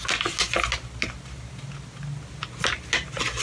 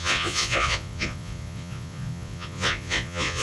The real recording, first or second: first